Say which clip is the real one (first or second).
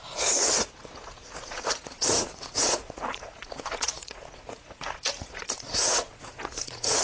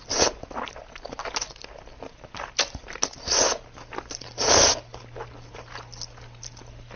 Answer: second